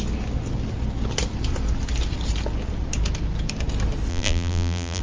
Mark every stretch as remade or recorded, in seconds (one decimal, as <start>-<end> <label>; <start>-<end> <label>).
0.0-4.1 recorded; 4.1-5.0 remade